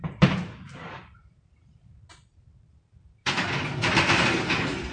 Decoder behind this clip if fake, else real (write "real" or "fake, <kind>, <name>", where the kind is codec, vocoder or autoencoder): fake, vocoder, BigVGAN v2